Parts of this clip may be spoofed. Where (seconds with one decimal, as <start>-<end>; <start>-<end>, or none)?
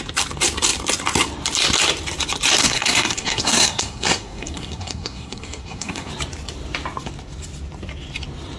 2.6-6.1